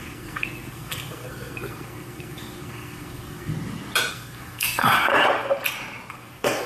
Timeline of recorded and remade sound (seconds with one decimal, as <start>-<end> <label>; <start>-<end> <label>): 0.0-3.5 remade; 3.5-4.1 recorded; 4.1-5.1 remade; 5.1-6.1 recorded; 6.1-6.7 remade